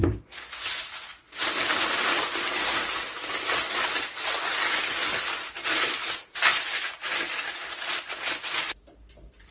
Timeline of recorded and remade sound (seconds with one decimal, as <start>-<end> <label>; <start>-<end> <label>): 0.0-9.5 recorded